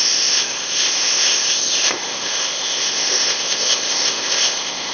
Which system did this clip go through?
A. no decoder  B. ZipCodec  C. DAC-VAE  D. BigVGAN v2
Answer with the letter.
B